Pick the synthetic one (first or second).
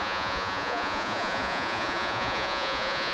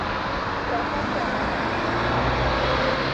first